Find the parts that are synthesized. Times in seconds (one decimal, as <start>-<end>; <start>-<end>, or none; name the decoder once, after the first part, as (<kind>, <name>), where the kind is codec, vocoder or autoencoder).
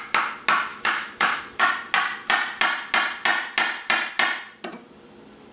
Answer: 0.7-1.7 (autoencoder, DAC-VAE)